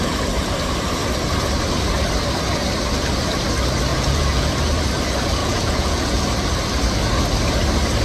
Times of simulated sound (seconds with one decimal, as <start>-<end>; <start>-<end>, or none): 3.9-4.5; 5.4-6.2

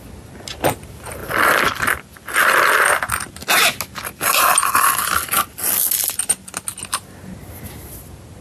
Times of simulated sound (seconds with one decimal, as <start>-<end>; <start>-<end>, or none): none

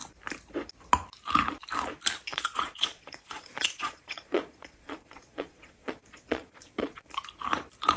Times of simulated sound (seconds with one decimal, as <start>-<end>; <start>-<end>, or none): 2.3-7.1

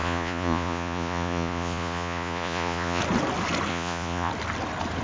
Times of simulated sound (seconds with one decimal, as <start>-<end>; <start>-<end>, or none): 0.0-3.0; 3.7-4.3

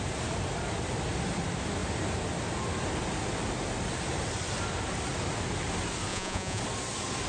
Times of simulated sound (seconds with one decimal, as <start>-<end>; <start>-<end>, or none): 6.1-6.6

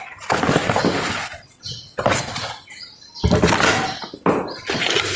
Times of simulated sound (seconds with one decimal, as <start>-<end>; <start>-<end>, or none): none

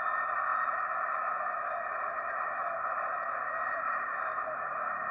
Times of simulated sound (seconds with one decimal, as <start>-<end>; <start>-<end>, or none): none